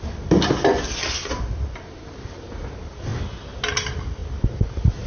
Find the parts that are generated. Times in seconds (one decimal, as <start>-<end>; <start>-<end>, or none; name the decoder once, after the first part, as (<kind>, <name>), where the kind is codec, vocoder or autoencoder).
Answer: none